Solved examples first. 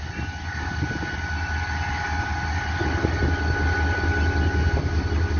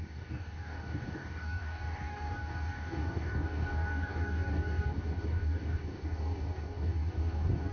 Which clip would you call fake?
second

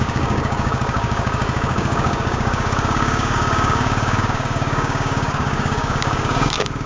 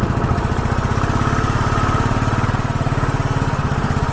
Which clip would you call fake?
first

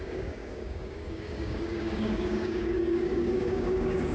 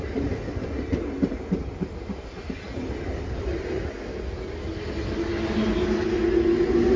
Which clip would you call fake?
first